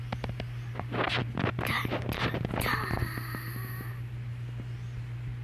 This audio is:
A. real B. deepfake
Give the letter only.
A